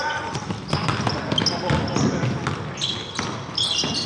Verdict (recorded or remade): recorded